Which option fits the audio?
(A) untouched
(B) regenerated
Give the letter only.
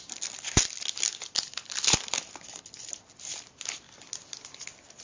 A